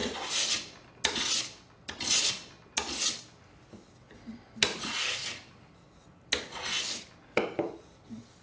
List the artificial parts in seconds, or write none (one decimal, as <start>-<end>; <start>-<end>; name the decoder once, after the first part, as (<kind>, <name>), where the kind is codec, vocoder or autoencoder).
none